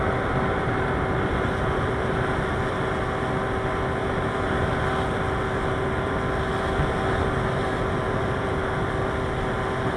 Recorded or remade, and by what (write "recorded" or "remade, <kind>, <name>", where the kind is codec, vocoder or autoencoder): recorded